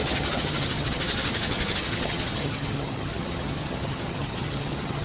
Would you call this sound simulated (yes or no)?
yes